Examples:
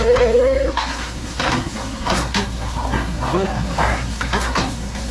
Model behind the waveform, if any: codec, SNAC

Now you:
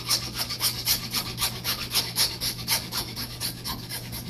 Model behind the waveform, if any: codec, DAC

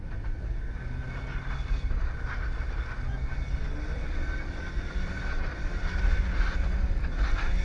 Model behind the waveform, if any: none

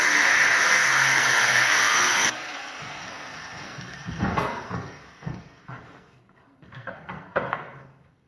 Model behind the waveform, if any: codec, SNAC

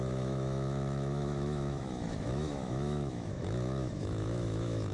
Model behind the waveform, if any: autoencoder, DAC-VAE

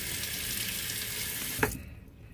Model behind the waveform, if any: none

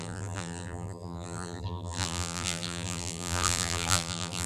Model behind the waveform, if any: vocoder, BigVGAN v2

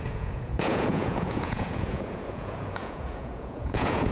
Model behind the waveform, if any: vocoder, Vocos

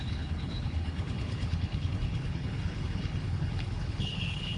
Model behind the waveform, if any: codec, HILCodec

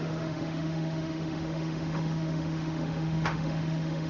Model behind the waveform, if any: autoencoder, DAC-VAE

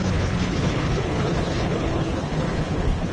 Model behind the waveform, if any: codec, HILCodec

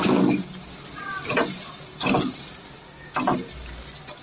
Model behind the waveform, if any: none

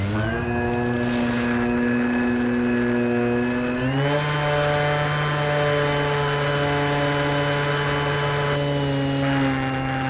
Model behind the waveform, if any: none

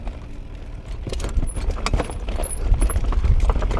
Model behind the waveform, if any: none